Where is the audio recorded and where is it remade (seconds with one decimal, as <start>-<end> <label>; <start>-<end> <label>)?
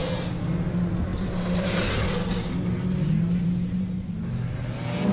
0.0-5.1 recorded